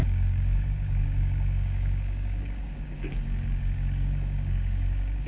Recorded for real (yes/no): no